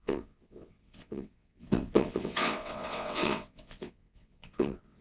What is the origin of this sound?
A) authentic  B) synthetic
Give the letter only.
B